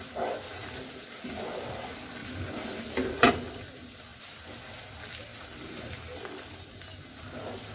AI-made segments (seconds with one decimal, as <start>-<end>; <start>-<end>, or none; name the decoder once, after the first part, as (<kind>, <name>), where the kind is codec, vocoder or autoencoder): none